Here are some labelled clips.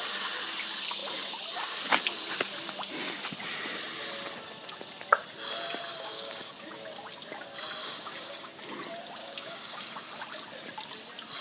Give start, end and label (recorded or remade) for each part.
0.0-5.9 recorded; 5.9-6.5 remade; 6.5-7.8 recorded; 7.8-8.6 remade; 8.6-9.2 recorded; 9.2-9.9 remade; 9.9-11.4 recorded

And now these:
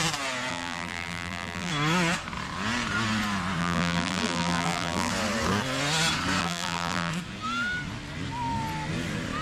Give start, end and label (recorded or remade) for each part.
0.0-0.5 recorded; 0.5-1.7 remade; 1.7-3.6 recorded; 3.6-5.1 remade; 5.1-6.4 recorded; 6.4-7.1 remade; 7.1-9.4 recorded

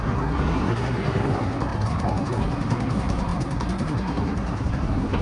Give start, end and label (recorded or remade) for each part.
0.0-5.2 remade

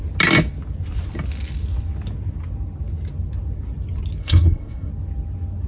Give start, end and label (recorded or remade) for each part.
0.0-4.2 recorded; 4.2-4.9 remade; 4.9-5.7 recorded

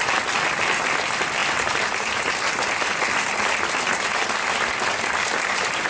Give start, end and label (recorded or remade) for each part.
0.0-5.9 recorded